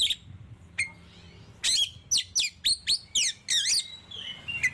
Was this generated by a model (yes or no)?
no